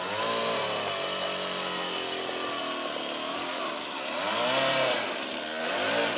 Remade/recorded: recorded